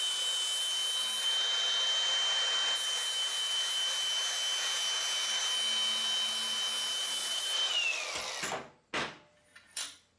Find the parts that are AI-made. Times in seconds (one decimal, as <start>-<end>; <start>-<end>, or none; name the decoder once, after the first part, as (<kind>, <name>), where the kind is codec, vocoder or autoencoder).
7.2-7.7 (vocoder, BigVGAN v2)